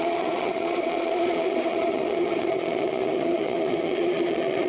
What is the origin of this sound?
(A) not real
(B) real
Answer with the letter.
A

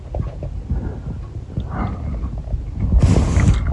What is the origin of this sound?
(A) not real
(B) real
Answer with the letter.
B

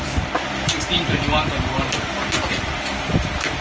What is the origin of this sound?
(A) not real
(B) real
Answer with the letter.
B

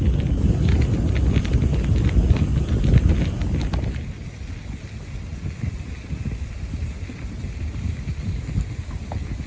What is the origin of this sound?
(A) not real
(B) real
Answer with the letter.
B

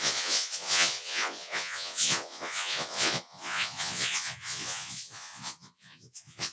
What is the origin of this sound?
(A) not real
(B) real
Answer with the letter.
A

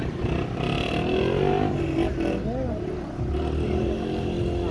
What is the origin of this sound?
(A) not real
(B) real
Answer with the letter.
B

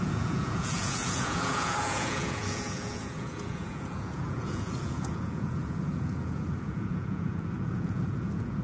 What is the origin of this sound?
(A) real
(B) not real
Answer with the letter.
B